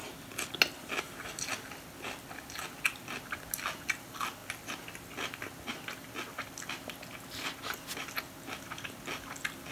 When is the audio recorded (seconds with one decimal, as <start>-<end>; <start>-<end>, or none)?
0.0-9.7